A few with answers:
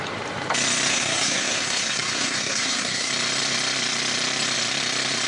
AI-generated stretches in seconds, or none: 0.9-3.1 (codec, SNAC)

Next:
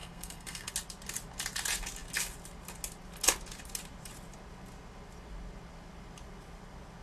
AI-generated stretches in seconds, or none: 0.0-0.7 (codec, SNAC)

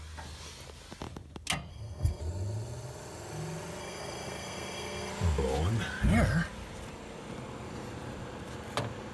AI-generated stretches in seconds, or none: 1.7-2.2 (codec, SNAC); 3.8-5.1

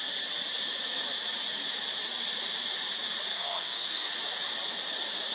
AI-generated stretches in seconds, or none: 3.3-4.1 (codec, SNAC)

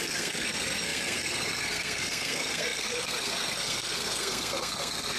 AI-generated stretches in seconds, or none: 0.0-5.2 (codec, SNAC)

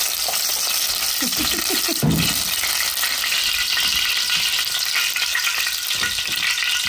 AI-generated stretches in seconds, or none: none

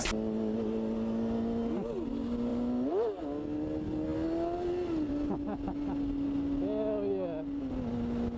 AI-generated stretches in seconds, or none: none

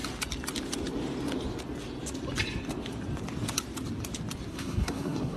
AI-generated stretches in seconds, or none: 4.5-5.4 (codec, SNAC)